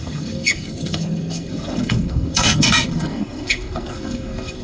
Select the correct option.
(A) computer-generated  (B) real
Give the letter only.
A